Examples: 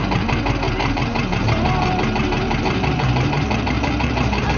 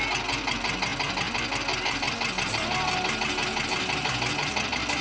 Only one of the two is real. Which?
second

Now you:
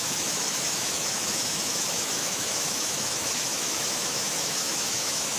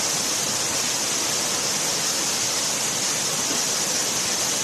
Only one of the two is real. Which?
second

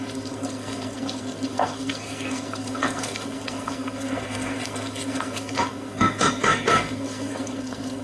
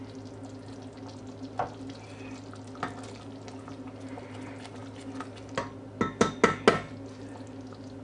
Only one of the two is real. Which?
second